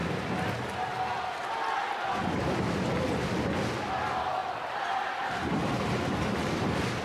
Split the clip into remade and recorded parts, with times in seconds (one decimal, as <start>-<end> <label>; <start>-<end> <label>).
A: 0.0-7.0 recorded